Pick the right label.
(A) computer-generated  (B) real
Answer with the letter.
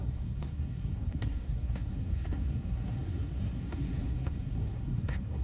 A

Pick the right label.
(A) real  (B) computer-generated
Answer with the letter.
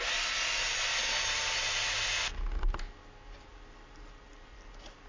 A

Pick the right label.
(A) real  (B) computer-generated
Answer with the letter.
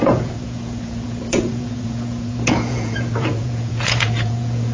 B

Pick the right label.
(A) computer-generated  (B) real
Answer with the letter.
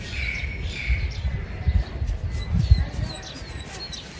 B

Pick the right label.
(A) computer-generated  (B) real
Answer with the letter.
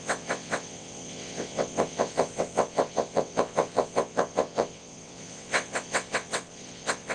A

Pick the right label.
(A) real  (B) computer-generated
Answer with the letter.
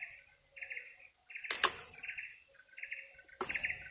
A